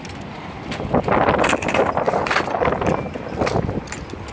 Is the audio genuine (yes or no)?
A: yes